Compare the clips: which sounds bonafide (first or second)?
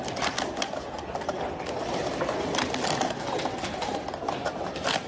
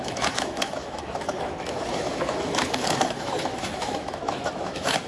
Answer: first